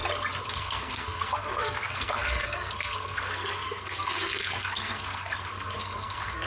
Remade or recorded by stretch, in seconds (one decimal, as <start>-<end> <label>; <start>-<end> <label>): 0.0-0.5 recorded; 0.5-6.5 remade